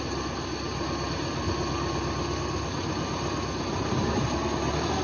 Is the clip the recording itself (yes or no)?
yes